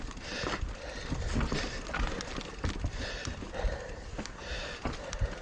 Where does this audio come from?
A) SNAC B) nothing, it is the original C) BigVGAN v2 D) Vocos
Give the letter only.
B